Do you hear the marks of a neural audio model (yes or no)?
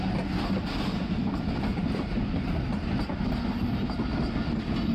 no